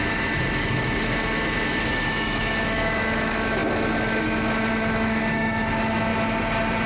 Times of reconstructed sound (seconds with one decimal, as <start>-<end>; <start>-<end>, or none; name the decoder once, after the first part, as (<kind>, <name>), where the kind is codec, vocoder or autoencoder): 0.0-6.1 (autoencoder, DAC-VAE)